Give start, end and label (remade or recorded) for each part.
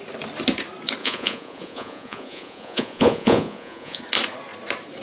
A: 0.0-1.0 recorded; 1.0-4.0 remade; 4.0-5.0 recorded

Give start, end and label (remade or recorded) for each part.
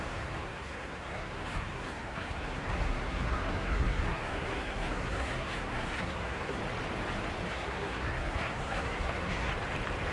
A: 0.0-6.6 remade; 6.6-7.5 recorded; 7.5-9.5 remade; 9.5-10.1 recorded